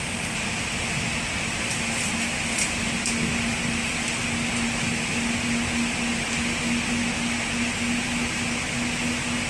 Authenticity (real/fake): real